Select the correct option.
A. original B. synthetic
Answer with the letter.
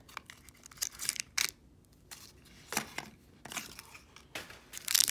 A